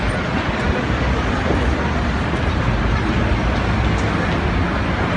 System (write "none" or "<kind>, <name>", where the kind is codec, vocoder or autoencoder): none